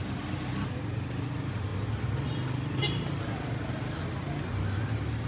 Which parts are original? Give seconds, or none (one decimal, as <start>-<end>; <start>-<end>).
0.0-5.3